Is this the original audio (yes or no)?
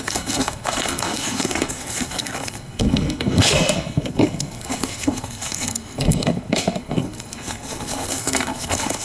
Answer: no